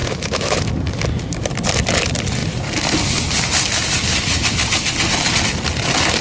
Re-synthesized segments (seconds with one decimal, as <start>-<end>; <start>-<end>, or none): 0.0-0.7